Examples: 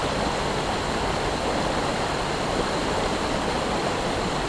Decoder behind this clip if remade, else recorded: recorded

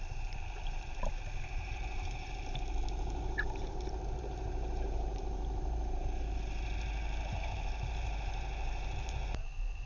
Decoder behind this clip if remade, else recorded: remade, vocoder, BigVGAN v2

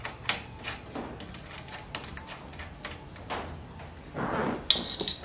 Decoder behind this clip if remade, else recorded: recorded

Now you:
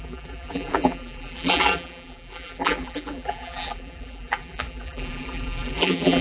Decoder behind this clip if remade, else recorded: remade, vocoder, BigVGAN v2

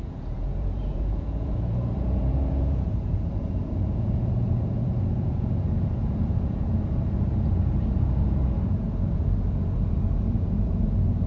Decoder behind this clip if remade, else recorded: remade, vocoder, Vocos